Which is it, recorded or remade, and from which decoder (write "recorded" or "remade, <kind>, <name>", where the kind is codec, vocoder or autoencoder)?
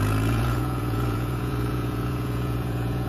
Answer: remade, vocoder, Vocos